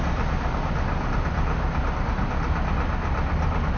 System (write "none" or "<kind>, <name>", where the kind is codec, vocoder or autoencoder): none